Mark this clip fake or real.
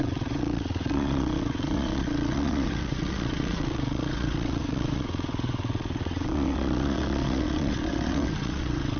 fake